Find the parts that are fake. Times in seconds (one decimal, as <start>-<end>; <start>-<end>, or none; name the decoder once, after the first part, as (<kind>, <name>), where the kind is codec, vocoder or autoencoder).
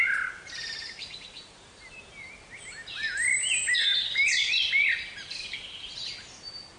0.8-2.0 (vocoder, BigVGAN v2); 3.0-4.4